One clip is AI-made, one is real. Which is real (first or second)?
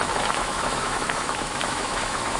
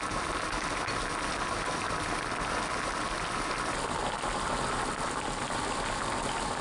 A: second